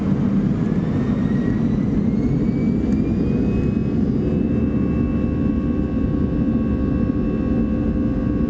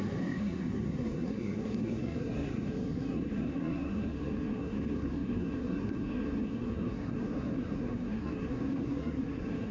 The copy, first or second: second